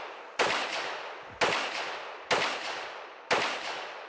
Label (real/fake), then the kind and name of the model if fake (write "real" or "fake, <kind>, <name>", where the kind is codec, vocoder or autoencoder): fake, vocoder, BigVGAN v2